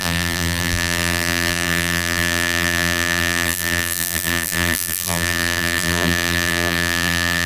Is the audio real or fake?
fake